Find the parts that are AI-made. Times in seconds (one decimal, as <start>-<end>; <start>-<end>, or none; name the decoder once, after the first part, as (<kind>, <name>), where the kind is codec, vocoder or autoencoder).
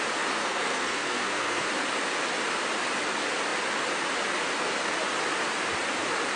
0.4-1.6 (codec, SNAC)